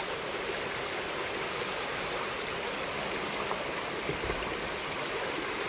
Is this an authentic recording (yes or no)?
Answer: yes